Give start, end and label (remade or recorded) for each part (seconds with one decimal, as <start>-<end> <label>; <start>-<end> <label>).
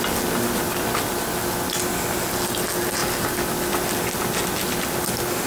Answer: 0.0-5.5 recorded